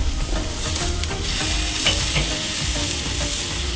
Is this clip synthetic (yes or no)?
yes